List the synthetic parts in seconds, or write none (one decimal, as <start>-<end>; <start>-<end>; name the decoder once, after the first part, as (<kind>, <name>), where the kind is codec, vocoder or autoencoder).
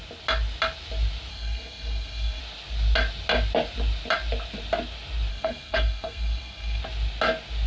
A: 1.3-2.4 (codec, SNAC); 5.3-6.8